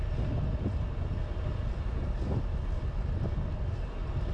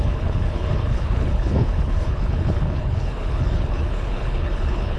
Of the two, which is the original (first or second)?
first